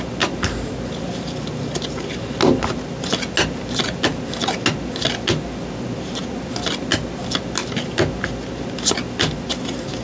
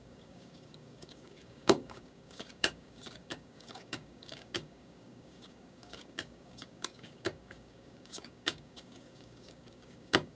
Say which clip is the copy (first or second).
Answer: second